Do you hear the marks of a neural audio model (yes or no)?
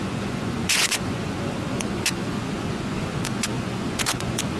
yes